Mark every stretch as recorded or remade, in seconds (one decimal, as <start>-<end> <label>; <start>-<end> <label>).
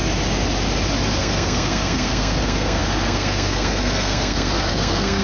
0.0-1.2 recorded; 1.2-5.2 remade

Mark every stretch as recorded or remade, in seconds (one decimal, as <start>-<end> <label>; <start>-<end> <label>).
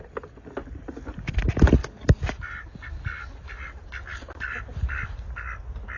0.0-6.0 recorded